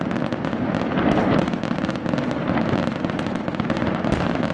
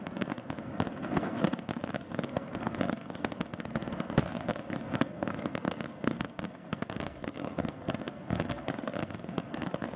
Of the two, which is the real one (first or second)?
first